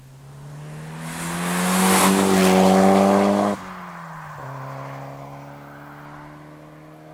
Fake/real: real